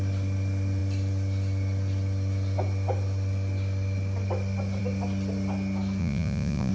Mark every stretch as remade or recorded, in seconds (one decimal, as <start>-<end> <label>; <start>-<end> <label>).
0.0-6.0 recorded; 6.0-6.7 remade